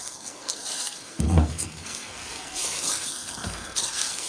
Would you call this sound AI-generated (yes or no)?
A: yes